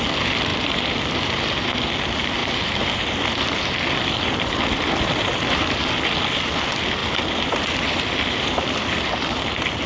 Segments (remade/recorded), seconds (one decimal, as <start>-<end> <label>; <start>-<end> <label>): 0.0-0.5 recorded; 0.5-1.4 remade; 1.4-2.4 recorded; 2.4-5.8 remade; 5.8-7.0 recorded; 7.0-9.9 remade